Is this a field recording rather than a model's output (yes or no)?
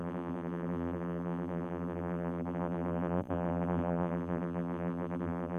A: no